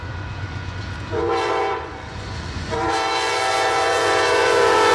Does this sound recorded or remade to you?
remade